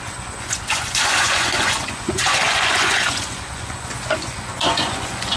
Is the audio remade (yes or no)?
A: yes